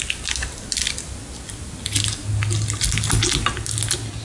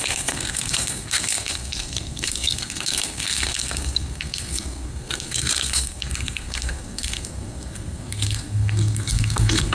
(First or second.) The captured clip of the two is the first